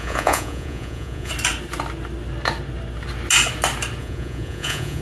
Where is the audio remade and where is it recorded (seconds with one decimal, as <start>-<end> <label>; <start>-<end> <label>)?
0.0-1.3 remade; 1.3-4.0 recorded; 4.0-5.0 remade